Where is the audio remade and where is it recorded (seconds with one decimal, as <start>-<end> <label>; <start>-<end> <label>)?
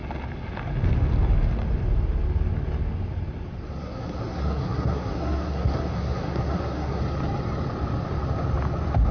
0.0-3.8 recorded; 3.8-7.0 remade; 7.0-9.1 recorded